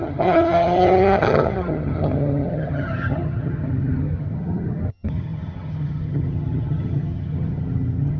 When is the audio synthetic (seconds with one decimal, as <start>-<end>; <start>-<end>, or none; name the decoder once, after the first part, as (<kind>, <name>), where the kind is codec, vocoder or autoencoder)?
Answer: 0.0-8.2 (vocoder, HiFi-GAN)